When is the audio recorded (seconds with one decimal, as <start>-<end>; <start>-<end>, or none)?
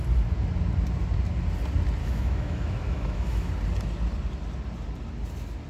0.0-2.0; 3.5-5.7